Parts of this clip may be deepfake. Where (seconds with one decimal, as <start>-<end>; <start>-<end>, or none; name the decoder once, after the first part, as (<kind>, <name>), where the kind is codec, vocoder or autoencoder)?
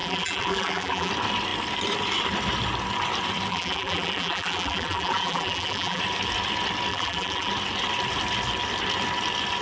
0.0-1.1 (vocoder, BigVGAN v2); 3.5-6.0; 6.9-7.5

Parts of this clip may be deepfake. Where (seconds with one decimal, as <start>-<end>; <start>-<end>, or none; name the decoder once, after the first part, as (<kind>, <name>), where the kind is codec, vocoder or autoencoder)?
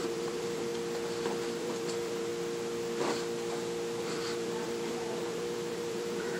0.0-0.7 (vocoder, BigVGAN v2); 1.6-2.3; 4.0-6.4